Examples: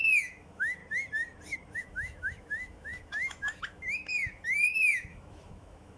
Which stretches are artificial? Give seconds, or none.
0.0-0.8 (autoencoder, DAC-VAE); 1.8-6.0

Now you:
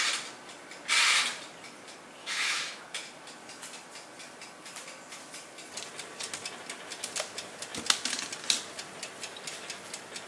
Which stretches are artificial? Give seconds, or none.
2.2-2.8 (autoencoder, DAC-VAE)

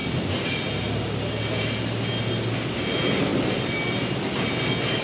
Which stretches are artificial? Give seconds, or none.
none

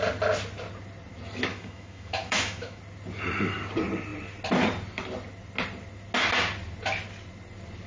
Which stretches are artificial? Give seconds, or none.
1.5-2.8 (autoencoder, DAC-VAE)